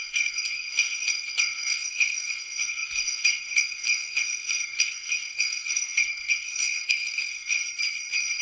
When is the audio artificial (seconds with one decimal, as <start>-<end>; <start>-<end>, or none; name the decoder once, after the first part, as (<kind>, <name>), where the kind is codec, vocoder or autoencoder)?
0.0-7.6 (codec, SNAC)